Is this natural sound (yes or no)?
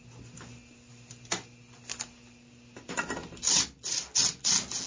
yes